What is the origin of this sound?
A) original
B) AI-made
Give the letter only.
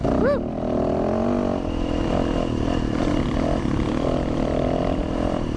A